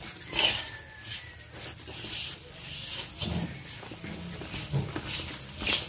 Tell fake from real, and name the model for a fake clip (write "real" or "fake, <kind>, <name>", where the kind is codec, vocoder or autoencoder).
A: real